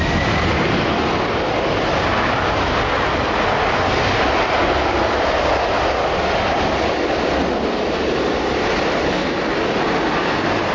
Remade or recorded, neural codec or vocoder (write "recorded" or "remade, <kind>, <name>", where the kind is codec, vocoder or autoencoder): recorded